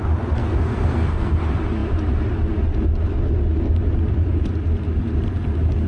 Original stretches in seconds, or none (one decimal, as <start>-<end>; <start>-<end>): 0.0-0.4; 1.4-5.9

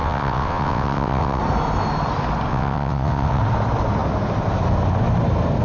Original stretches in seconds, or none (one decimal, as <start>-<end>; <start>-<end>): 1.4-2.5; 3.4-5.6

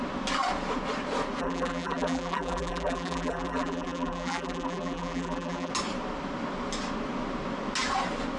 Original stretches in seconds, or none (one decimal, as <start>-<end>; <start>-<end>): 0.0-1.4; 5.7-8.4

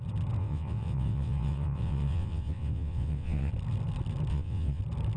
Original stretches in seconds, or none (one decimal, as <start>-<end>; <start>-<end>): 0.0-0.4; 3.5-4.3; 4.8-5.2

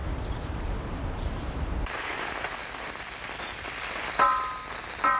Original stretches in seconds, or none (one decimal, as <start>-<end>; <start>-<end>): 2.5-5.2